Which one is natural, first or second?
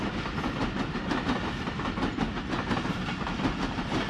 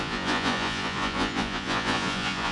first